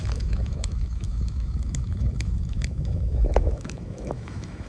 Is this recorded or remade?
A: remade